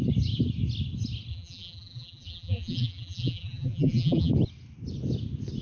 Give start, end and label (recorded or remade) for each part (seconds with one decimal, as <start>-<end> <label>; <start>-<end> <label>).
0.0-1.3 recorded; 1.3-4.3 remade; 4.3-5.6 recorded